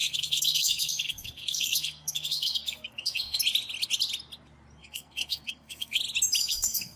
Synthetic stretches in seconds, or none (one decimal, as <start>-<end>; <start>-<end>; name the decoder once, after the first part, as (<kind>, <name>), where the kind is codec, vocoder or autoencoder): 0.0-3.4 (codec, SNAC); 4.8-6.0; 6.4-7.0